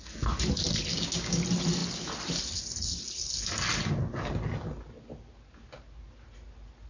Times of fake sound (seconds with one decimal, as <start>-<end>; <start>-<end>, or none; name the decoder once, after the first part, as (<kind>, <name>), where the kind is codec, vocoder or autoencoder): 0.9-1.4 (codec, DAC)